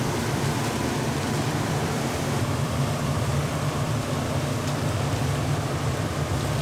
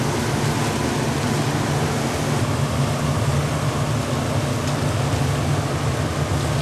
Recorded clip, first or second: second